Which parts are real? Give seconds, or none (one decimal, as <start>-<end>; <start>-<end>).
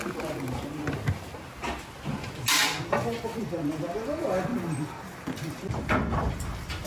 0.0-2.9